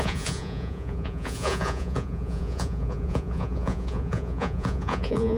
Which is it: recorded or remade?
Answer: remade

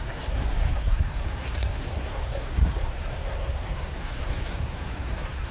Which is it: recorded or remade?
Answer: remade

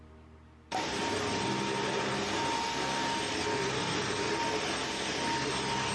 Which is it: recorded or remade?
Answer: recorded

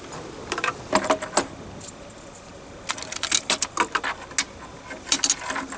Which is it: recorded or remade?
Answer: recorded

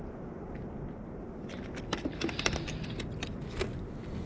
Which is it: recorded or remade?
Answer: recorded